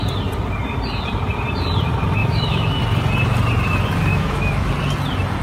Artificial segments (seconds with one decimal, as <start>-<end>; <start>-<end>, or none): 2.2-2.8; 4.1-4.7